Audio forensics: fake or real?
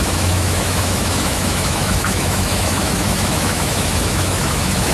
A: fake